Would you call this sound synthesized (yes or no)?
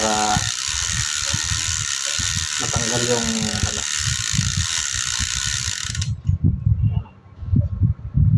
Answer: no